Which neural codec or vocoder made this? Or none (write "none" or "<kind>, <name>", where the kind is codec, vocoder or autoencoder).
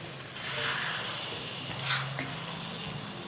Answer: none